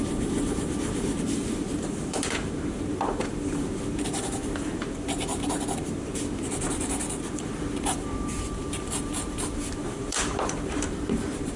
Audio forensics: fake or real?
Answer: fake